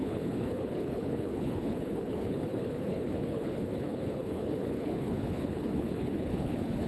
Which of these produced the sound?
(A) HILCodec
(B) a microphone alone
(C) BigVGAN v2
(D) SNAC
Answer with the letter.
A